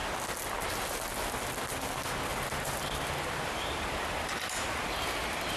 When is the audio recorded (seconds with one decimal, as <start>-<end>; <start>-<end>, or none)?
0.0-2.3; 4.9-5.6

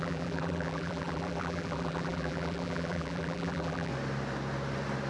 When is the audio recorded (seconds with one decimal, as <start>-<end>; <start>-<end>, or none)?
3.9-5.1

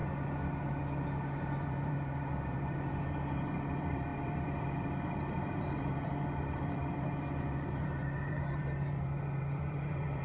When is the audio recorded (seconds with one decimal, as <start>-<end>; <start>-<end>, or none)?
0.0-1.6

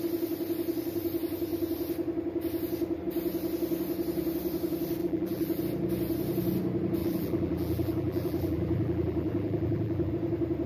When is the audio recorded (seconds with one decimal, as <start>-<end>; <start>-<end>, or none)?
0.0-5.0; 5.6-7.0; 10.1-10.7

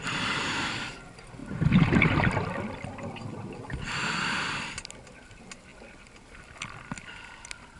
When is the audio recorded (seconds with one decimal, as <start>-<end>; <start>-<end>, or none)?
0.0-7.8

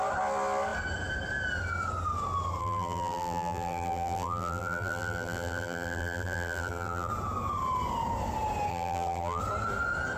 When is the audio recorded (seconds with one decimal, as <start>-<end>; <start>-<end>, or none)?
0.0-2.6; 7.1-8.7; 9.4-10.2

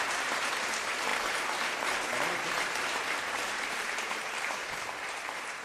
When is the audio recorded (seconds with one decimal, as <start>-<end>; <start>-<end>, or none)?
none